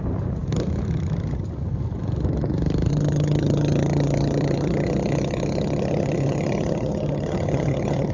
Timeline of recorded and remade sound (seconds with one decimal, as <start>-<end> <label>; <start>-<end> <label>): 0.0-2.9 recorded; 2.9-8.1 remade